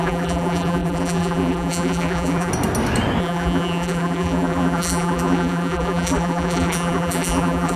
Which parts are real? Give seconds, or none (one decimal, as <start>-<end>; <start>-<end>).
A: 2.5-3.2